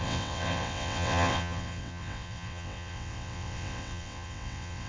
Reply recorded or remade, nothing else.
remade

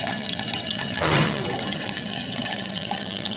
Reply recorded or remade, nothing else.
remade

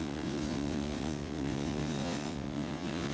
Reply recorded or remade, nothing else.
remade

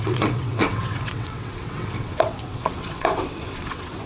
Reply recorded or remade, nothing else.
remade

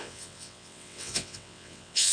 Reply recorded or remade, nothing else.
remade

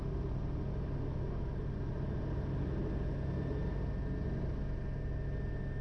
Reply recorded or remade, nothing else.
recorded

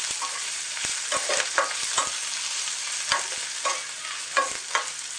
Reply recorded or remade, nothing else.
recorded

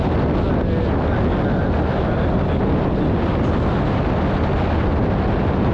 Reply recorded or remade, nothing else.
recorded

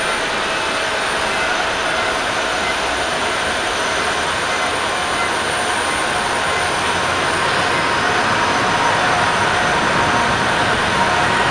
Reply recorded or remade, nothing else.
recorded